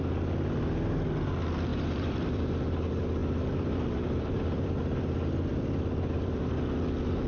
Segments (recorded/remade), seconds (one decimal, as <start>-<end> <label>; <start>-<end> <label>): 0.0-1.7 recorded; 1.7-2.4 remade; 2.4-3.2 recorded; 3.2-4.8 remade; 4.8-5.5 recorded; 5.5-6.5 remade; 6.5-7.3 recorded